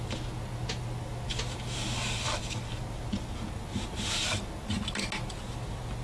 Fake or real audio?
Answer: real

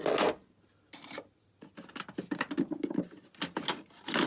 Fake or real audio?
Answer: real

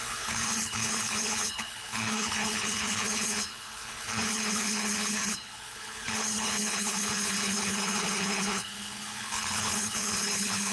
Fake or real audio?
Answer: fake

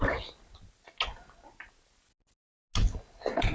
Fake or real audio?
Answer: real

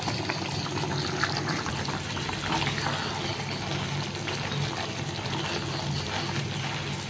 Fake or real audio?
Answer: real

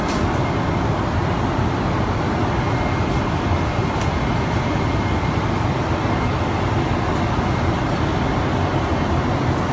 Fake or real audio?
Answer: real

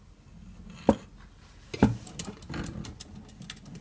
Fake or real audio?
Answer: real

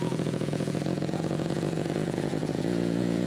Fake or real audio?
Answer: fake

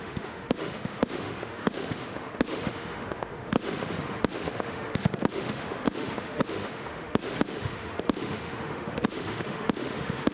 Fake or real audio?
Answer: fake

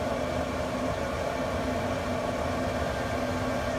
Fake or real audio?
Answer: real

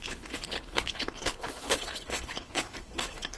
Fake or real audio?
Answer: fake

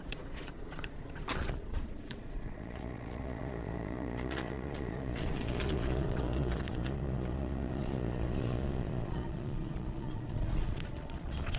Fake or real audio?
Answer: fake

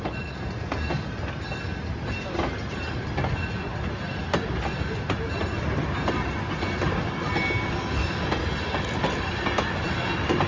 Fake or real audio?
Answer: real